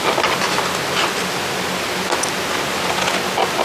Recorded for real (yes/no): yes